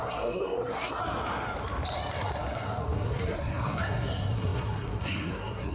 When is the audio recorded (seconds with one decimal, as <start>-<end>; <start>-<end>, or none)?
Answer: 1.0-2.2

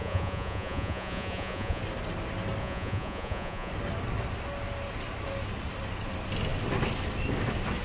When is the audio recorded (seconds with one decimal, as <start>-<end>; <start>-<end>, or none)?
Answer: 1.8-2.6; 3.7-7.8

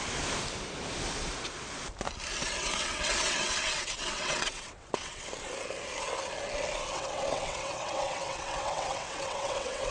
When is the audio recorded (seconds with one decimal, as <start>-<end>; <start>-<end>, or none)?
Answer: 0.0-2.4; 5.2-6.9

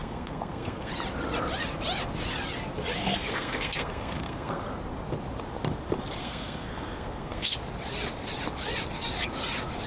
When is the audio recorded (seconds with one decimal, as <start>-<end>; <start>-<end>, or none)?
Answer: 0.9-3.0; 4.6-6.2; 7.5-9.9